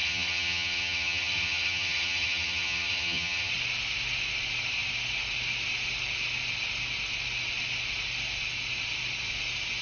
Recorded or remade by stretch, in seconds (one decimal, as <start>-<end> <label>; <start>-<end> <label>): 0.0-3.5 remade; 3.5-9.8 recorded